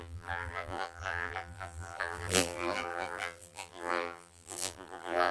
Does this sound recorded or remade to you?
remade